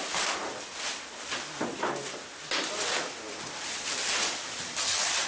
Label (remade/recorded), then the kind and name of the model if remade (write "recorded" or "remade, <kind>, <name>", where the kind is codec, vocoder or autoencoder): remade, vocoder, BigVGAN v2